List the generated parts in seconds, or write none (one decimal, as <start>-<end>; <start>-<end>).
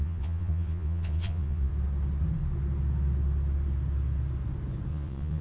0.0-1.7; 4.9-5.4